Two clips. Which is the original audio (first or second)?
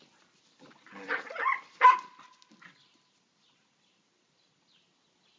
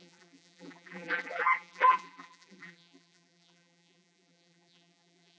first